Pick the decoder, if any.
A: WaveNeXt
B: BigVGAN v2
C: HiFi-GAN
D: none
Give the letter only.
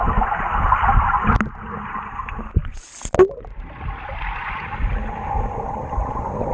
D